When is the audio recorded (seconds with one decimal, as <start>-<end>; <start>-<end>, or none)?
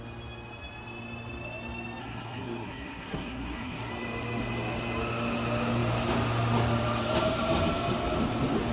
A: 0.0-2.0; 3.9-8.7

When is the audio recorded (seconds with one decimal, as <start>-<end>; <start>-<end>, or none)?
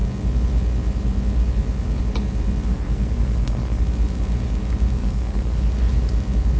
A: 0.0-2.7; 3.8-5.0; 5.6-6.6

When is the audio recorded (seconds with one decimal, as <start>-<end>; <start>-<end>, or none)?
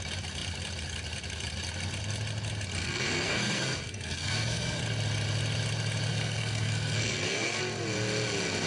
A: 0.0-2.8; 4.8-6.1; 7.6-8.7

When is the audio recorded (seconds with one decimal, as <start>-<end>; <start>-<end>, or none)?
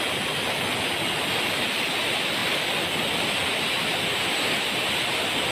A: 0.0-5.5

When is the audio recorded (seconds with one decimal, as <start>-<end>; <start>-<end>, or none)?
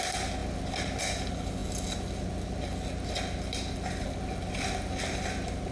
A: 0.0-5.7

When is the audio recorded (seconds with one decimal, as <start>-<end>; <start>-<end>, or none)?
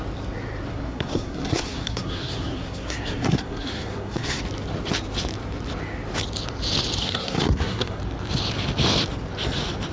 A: 0.0-0.7; 4.4-7.0; 8.0-9.9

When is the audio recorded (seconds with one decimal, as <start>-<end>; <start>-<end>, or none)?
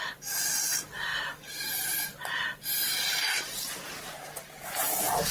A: 0.0-5.3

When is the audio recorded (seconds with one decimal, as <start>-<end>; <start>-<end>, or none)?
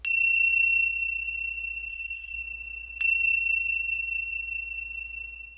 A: 0.0-1.9; 2.4-5.6